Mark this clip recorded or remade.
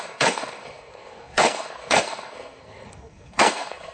remade